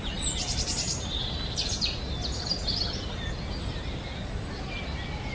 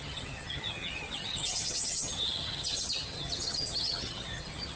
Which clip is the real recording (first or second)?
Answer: first